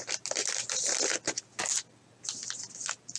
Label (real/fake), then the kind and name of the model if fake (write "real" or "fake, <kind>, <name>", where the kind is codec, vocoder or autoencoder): real